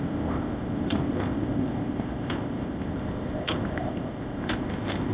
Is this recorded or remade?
remade